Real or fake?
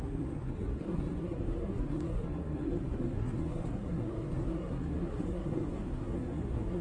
fake